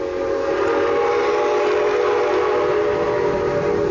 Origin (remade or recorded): recorded